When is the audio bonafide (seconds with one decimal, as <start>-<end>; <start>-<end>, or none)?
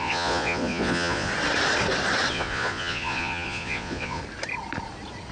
1.3-2.3; 4.2-5.3